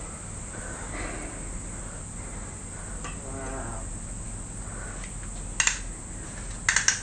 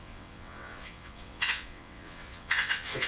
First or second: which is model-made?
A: second